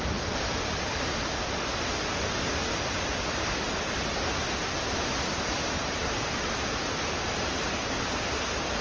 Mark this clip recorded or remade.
recorded